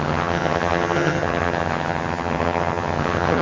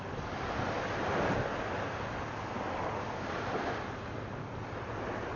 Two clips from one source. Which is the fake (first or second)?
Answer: first